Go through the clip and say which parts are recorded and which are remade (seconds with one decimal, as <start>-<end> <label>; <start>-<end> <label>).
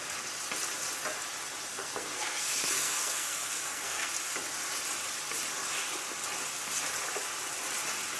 0.0-1.7 recorded; 1.7-4.1 remade; 4.1-8.2 recorded